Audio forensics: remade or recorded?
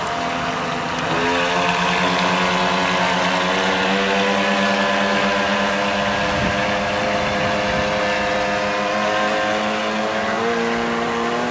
recorded